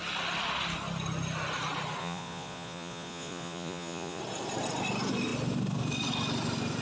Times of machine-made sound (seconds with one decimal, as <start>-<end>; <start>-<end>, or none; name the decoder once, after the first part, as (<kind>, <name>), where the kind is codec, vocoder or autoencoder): 2.0-4.2 (vocoder, Vocos)